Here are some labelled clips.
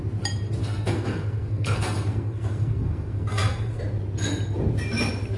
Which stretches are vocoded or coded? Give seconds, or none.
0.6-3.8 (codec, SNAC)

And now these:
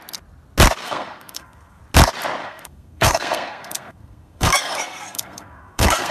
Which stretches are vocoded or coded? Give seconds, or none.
0.8-1.8 (codec, SNAC); 2.4-6.1

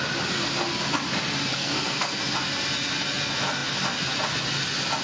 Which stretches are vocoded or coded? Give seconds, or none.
1.5-2.2 (codec, SNAC)

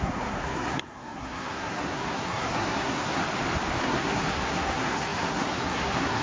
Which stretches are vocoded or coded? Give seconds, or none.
0.0-3.2 (codec, SNAC); 3.8-6.2

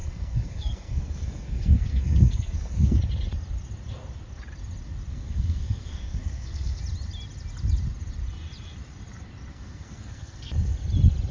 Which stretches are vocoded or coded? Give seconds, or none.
0.0-3.0 (codec, SNAC); 5.1-6.8; 9.5-10.5

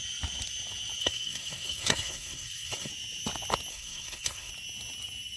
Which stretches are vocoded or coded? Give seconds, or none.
1.0-2.9 (codec, SNAC); 3.7-4.5

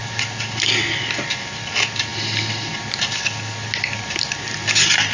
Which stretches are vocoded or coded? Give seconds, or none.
none

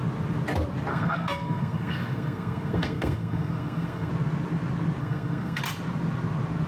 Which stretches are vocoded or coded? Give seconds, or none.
0.9-4.1 (codec, SNAC); 5.0-5.6